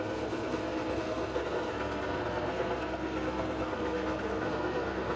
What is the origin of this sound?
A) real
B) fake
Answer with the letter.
B